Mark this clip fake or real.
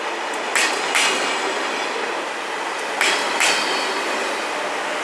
real